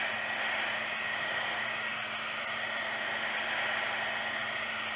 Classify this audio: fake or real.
real